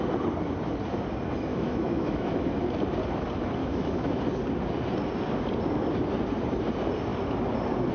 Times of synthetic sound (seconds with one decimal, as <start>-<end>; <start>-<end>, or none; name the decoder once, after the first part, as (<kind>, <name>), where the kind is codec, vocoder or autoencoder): 1.5-2.6 (autoencoder, DAC-VAE); 3.6-4.2